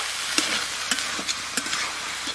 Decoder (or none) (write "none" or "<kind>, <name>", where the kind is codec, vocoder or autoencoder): none